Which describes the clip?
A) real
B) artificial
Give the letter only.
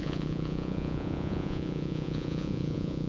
B